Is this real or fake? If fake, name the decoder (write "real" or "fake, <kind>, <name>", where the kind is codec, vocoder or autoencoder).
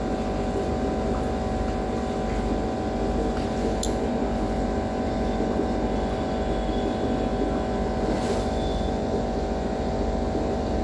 real